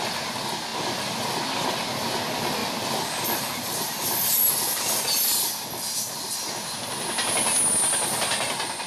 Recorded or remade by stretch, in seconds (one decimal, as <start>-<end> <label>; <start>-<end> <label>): 0.0-8.9 recorded